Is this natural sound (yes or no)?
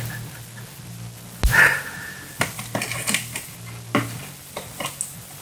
yes